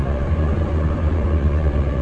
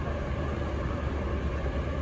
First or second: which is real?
second